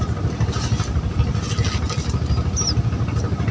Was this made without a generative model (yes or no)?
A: yes